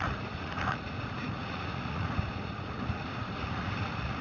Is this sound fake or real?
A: fake